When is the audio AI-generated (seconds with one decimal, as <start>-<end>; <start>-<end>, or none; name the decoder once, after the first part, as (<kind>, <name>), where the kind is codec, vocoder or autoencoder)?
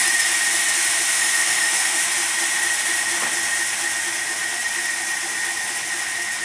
1.1-2.0 (autoencoder, DAC-VAE)